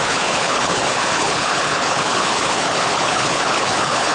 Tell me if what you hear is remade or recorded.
remade